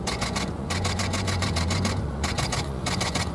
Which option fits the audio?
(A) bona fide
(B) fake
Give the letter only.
B